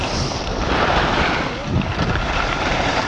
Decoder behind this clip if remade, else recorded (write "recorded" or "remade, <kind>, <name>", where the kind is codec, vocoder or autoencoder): remade, vocoder, BigVGAN v2